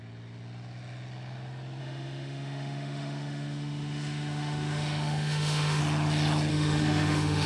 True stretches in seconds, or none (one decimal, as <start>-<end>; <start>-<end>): 0.0-1.8; 5.8-6.5